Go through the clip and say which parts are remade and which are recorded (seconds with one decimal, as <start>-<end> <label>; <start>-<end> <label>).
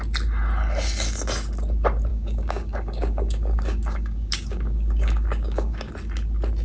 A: 0.0-2.1 recorded; 2.1-5.9 remade; 5.9-6.6 recorded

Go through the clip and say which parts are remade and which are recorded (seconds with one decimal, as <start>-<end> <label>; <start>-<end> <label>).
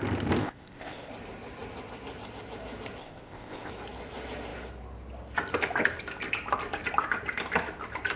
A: 0.0-0.4 recorded; 0.4-1.1 remade; 1.1-3.0 recorded; 3.0-3.7 remade; 3.7-8.2 recorded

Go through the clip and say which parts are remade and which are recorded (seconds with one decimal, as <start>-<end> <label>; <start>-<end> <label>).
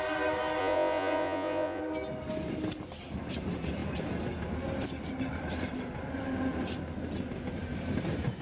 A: 0.0-0.6 recorded; 0.6-1.8 remade; 1.8-8.4 recorded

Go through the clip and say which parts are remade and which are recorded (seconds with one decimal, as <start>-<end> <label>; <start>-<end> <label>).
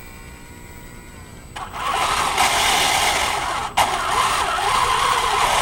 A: 0.0-5.6 recorded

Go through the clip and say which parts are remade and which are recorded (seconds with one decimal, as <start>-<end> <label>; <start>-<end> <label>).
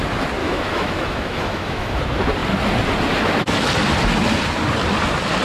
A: 0.0-0.4 recorded; 0.4-2.0 remade; 2.0-5.4 recorded